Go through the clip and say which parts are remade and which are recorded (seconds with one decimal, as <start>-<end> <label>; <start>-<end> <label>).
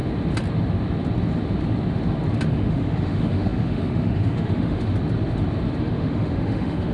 0.0-2.5 recorded; 2.5-4.9 remade; 4.9-5.8 recorded; 5.8-6.9 remade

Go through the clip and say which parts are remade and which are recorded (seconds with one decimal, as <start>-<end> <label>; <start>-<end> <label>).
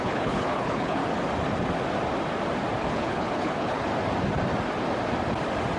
0.0-1.0 remade; 1.0-2.8 recorded; 2.8-3.9 remade; 3.9-5.8 recorded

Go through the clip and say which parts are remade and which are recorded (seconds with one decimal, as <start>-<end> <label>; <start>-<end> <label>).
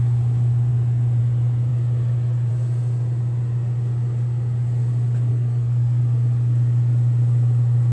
0.0-5.3 recorded; 5.3-6.0 remade; 6.0-7.9 recorded